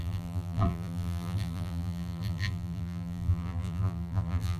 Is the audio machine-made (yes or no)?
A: yes